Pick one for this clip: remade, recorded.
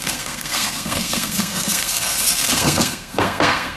remade